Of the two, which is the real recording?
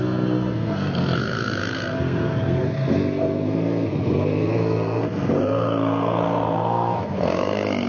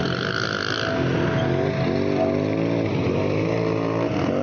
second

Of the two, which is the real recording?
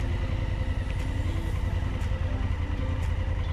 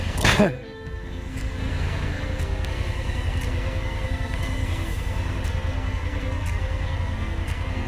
first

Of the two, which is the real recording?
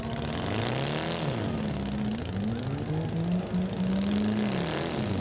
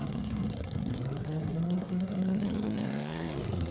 first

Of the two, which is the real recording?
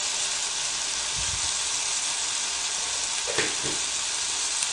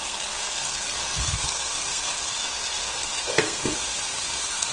first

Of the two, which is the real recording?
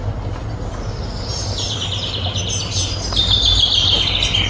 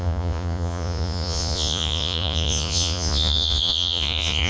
first